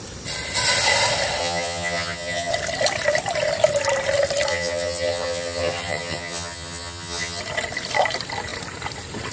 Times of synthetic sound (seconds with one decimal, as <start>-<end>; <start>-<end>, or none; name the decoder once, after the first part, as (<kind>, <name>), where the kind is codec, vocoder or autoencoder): 1.4-2.5 (vocoder, HiFi-GAN); 4.5-7.4